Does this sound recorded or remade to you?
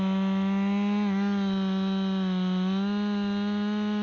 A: recorded